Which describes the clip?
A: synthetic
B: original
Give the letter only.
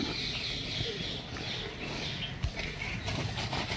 B